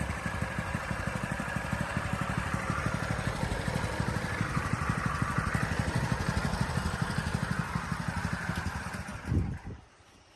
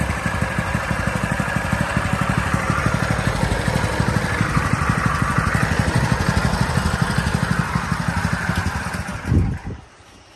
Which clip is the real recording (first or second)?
second